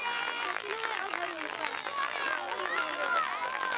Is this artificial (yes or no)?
yes